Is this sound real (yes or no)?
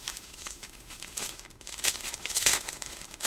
no